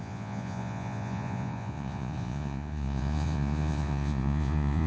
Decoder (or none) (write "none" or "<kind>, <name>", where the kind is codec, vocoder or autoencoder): vocoder, Vocos